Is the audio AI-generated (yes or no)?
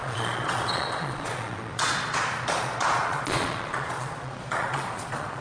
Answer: yes